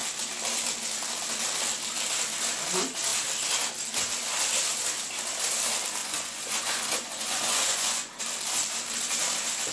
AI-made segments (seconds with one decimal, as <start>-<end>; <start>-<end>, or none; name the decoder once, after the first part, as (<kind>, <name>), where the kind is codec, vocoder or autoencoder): 6.0-8.2 (vocoder, Vocos)